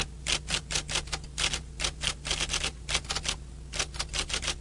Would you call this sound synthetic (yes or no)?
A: no